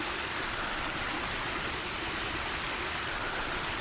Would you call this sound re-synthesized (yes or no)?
no